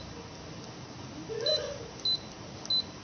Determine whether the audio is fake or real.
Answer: real